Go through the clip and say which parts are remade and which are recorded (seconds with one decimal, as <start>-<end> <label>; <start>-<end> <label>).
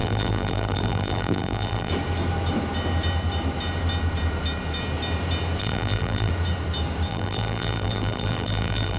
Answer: 0.0-1.9 remade; 1.9-5.6 recorded; 5.6-6.3 remade; 6.3-7.1 recorded; 7.1-9.0 remade